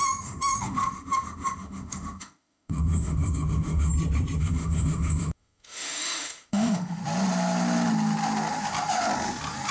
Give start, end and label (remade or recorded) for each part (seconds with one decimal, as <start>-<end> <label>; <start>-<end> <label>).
0.0-3.9 remade; 3.9-4.4 recorded; 4.4-7.0 remade; 7.0-9.7 recorded